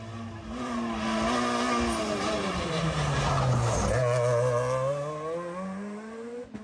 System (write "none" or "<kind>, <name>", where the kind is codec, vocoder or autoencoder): none